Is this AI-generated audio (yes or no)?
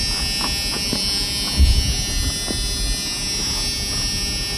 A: no